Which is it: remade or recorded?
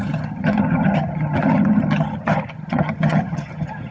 remade